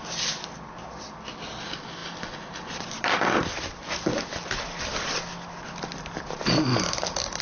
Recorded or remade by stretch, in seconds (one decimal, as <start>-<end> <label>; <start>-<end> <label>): 0.0-7.4 recorded